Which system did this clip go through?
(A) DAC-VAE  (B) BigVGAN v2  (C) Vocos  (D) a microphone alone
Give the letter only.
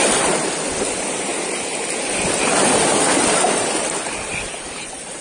D